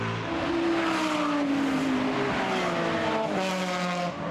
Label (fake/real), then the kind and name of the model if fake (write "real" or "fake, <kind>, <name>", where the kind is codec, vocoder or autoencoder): real